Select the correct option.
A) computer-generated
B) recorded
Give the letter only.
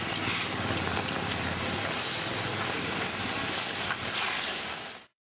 B